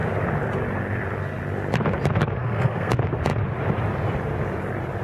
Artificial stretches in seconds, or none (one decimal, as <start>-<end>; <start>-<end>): 2.4-2.9